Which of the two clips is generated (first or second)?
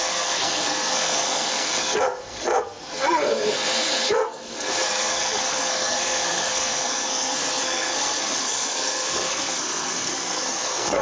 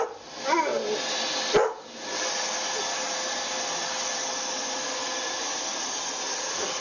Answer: first